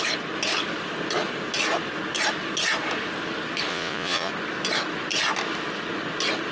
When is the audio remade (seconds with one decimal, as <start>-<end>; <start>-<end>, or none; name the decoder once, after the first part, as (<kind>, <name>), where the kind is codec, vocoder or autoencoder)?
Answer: 3.7-4.3 (vocoder, Vocos)